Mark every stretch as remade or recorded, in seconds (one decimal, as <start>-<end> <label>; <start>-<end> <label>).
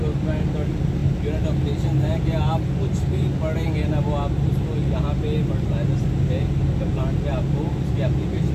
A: 0.0-8.5 recorded